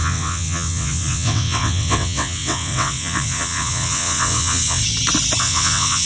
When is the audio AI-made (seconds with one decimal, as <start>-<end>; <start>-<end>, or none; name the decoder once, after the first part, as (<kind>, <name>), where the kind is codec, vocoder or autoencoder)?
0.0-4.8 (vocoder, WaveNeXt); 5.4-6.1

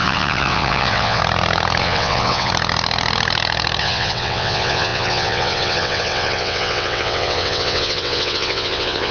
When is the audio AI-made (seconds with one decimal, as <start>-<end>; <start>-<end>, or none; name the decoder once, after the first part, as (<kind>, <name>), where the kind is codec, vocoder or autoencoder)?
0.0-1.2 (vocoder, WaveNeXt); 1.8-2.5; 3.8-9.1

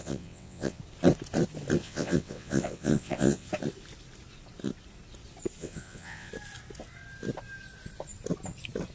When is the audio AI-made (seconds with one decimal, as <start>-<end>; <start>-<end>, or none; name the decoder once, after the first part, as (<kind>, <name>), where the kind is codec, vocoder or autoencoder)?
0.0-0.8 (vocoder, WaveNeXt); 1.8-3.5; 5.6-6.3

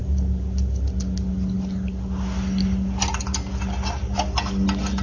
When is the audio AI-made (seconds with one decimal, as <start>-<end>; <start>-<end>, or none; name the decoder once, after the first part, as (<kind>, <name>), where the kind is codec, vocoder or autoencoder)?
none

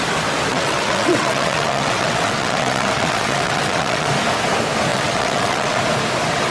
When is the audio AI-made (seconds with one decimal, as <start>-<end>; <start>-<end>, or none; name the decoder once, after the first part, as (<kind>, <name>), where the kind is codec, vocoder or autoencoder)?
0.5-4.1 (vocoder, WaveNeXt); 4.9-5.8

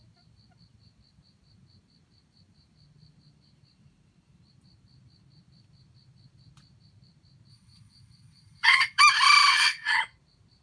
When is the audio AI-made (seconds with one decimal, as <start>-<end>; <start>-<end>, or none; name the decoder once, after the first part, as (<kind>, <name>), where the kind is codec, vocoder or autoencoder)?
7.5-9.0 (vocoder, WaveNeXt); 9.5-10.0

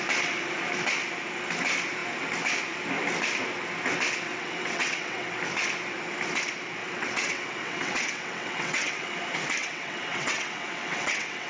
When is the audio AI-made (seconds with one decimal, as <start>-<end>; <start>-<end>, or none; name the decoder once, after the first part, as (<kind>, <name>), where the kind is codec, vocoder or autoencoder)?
4.3-5.4 (vocoder, WaveNeXt); 6.8-9.1; 9.6-11.5

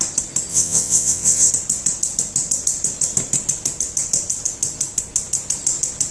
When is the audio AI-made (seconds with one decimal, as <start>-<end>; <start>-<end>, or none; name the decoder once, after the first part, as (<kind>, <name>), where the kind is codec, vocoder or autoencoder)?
0.5-1.5 (vocoder, WaveNeXt)